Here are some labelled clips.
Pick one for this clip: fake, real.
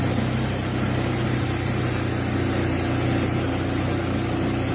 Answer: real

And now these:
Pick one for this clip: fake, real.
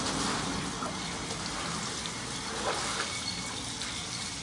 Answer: real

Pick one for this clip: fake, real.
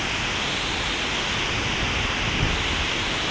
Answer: real